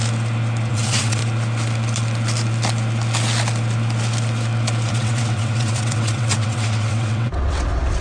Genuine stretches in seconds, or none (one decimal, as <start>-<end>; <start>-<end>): 0.0-0.7; 1.2-4.9